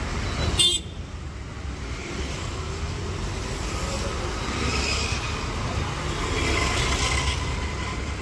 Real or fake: real